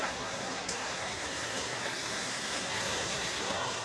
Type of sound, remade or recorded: remade